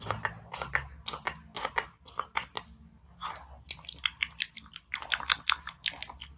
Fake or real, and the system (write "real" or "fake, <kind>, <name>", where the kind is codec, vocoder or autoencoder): real